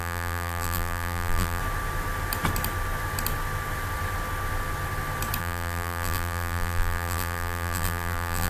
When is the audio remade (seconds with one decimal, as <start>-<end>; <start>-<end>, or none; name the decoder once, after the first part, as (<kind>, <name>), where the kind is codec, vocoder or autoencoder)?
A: 0.0-1.6 (vocoder, BigVGAN v2); 5.4-8.5